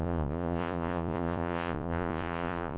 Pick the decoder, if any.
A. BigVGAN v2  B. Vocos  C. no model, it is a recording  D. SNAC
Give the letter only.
B